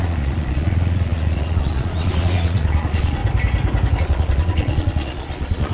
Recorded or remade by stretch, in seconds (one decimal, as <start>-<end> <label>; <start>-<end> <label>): 0.0-3.2 remade; 3.2-4.0 recorded; 4.0-5.7 remade